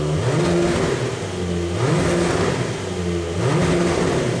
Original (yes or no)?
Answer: yes